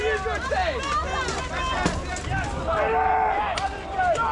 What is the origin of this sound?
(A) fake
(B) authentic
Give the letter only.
B